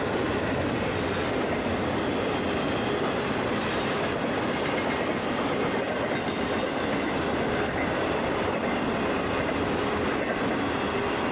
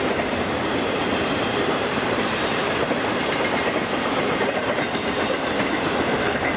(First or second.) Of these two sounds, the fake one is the second